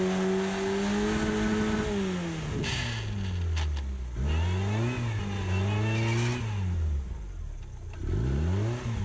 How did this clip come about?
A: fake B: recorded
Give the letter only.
B